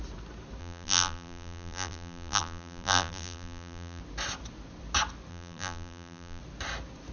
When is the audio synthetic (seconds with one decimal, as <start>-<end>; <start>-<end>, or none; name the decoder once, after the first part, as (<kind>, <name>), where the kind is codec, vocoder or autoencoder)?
0.6-4.0 (vocoder, BigVGAN v2); 5.3-6.4